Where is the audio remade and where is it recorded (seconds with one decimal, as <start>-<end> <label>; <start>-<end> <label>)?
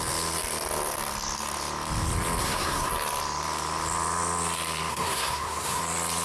0.0-2.4 recorded; 2.4-2.9 remade; 2.9-4.9 recorded; 4.9-5.8 remade; 5.8-6.2 recorded